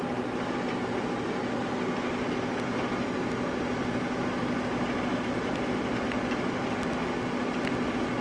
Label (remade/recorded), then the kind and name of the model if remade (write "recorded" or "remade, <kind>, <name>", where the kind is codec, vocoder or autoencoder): recorded